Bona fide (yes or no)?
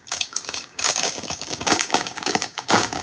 no